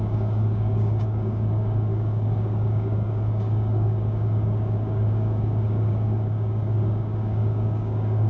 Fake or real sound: fake